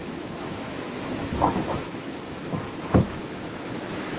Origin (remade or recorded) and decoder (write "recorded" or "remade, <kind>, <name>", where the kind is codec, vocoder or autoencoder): remade, autoencoder, DAC-VAE